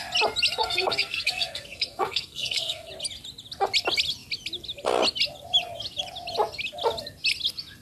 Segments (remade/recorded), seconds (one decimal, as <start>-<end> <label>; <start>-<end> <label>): 0.0-0.5 recorded; 0.5-2.9 remade; 2.9-7.8 recorded